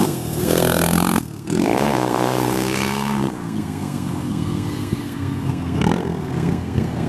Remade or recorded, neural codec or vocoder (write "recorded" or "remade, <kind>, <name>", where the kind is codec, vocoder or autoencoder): remade, codec, SNAC